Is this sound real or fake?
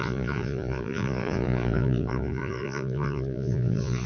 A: fake